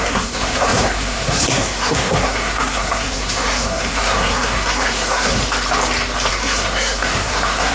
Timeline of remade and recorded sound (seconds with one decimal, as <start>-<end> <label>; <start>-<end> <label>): 0.0-5.4 remade; 5.4-6.3 recorded; 6.3-7.7 remade